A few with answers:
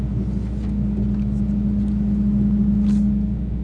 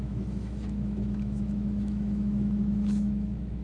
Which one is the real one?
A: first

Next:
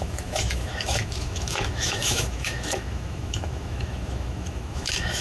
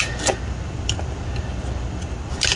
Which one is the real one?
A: second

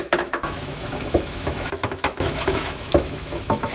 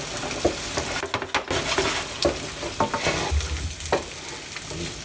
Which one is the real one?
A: second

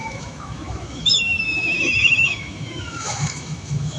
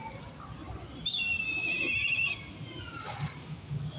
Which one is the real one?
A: second